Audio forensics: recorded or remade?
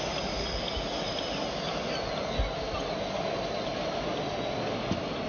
recorded